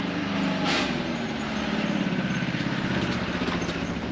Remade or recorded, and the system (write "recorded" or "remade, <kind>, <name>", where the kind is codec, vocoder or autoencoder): recorded